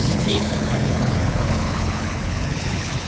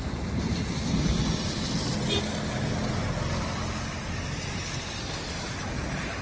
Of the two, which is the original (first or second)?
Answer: second